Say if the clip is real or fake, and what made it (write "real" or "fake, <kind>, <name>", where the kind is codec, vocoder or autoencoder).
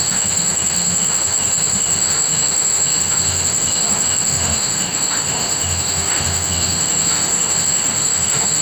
fake, autoencoder, DAC-VAE